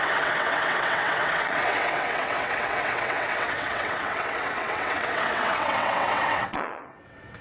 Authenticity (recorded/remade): remade